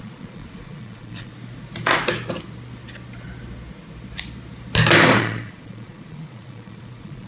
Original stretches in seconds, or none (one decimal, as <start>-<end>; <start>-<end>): 1.3-5.2